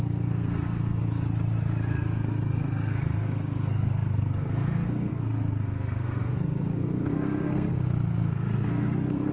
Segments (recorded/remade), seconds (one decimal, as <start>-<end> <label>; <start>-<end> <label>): 0.0-1.0 remade; 1.0-1.9 recorded; 1.9-9.3 remade